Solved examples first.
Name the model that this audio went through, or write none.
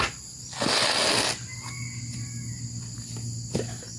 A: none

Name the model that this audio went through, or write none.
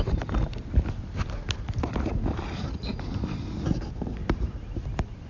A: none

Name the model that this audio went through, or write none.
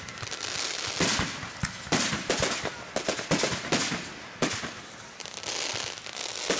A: none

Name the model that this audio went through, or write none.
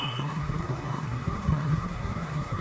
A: codec, SNAC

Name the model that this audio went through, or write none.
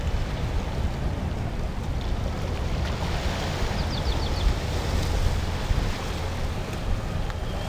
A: none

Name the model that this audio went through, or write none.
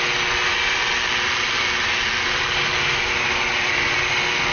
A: none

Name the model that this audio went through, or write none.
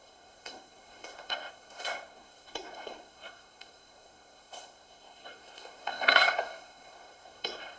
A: codec, SNAC